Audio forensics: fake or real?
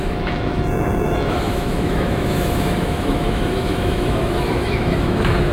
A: fake